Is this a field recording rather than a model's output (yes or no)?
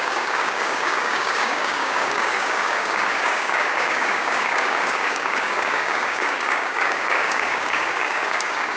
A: no